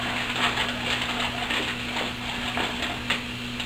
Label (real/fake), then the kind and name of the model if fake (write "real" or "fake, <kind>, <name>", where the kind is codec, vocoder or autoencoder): real